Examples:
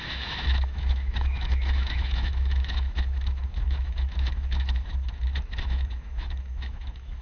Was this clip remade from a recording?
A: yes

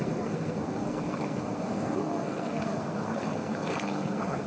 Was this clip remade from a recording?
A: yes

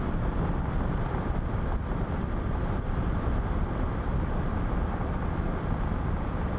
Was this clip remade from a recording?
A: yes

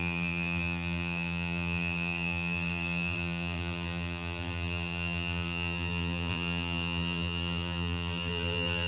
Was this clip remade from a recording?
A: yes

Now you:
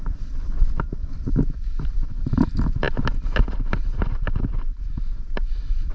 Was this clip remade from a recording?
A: yes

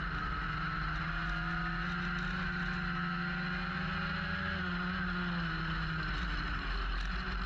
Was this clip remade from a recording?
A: no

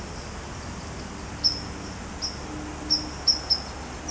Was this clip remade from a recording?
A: no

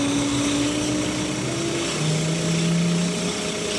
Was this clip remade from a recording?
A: no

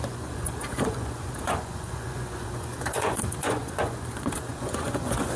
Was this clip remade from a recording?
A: yes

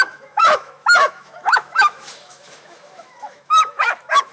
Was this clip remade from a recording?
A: yes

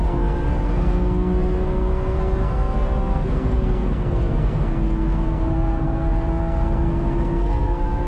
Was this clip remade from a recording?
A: yes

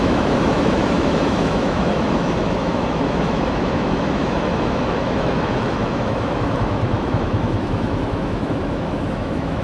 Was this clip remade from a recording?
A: yes